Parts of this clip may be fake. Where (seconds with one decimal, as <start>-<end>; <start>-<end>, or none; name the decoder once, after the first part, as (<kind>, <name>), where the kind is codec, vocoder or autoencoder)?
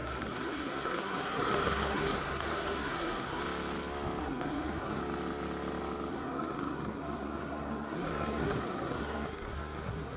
0.0-3.4 (codec, SNAC); 4.2-5.0; 6.1-10.2